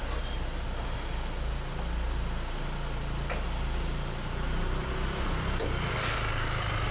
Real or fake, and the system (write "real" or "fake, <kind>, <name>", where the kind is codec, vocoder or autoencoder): real